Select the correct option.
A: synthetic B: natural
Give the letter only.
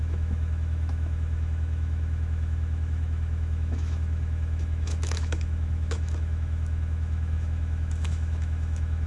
A